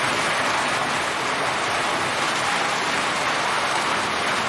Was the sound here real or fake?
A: real